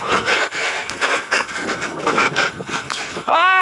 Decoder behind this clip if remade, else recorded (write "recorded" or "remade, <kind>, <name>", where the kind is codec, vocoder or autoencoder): remade, codec, SNAC